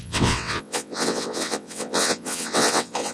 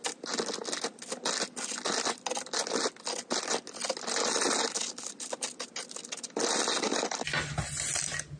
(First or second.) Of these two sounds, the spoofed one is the first